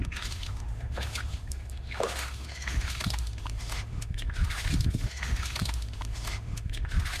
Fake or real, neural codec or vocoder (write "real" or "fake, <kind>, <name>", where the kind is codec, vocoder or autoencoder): fake, autoencoder, DAC-VAE